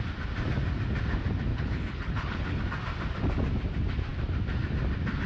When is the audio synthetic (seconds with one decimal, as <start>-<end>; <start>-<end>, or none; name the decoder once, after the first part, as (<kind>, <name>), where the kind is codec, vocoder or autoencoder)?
1.5-2.6 (codec, HILCodec)

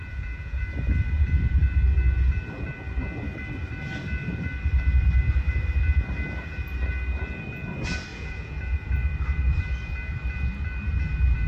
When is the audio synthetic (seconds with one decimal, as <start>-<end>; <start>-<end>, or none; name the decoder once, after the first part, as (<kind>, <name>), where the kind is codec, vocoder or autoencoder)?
0.0-0.6 (vocoder, Vocos); 8.1-8.9

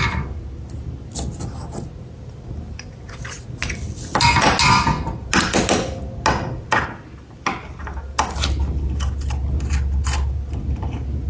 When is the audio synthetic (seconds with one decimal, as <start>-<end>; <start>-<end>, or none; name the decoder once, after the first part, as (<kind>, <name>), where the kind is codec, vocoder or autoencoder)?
none

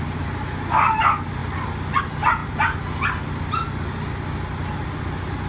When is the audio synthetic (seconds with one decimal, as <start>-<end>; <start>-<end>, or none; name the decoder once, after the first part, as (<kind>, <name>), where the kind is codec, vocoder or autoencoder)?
none

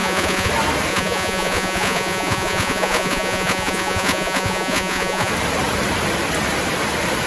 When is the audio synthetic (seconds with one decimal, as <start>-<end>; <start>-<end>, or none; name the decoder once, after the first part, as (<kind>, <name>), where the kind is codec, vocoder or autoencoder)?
0.0-0.5 (vocoder, Vocos); 0.9-5.3

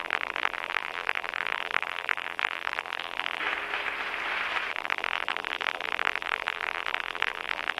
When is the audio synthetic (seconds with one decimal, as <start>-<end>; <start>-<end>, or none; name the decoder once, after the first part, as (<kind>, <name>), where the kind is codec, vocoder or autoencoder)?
0.0-3.4 (vocoder, BigVGAN v2); 4.7-7.8

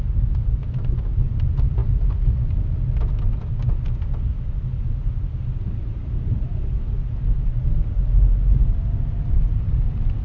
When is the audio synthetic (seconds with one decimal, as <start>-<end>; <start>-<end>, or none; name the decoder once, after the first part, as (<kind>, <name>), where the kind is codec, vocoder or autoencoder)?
none

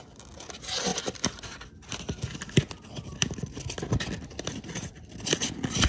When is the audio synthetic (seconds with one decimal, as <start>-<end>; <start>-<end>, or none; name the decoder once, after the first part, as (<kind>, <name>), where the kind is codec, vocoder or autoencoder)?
none